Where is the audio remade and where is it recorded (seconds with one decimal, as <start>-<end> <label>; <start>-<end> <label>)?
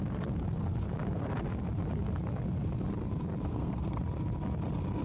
0.0-3.5 recorded; 3.5-4.0 remade; 4.0-5.0 recorded